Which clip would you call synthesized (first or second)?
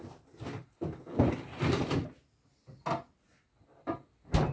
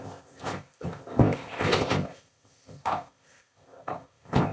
second